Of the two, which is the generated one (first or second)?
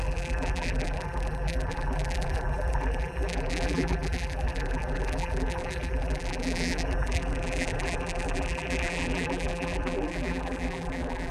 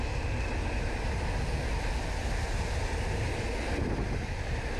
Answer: first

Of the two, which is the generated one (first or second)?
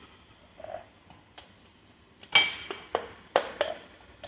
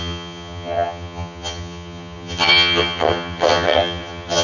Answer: second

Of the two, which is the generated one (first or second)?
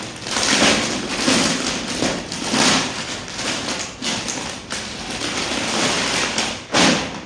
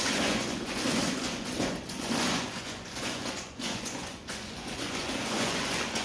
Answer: second